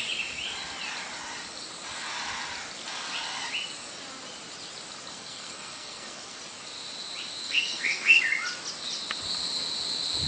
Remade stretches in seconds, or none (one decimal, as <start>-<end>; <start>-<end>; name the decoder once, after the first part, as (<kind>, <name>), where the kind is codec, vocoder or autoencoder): 5.1-6.4 (codec, SNAC); 7.4-8.2